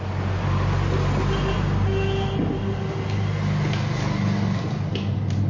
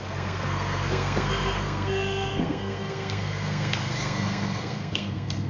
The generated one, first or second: second